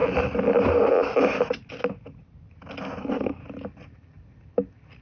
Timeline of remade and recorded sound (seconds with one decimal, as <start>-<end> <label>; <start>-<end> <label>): 0.0-3.0 recorded; 3.0-3.4 remade; 3.4-5.0 recorded